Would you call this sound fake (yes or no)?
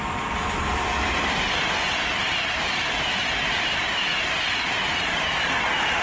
no